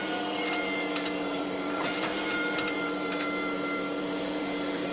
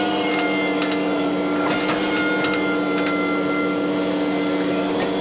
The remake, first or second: first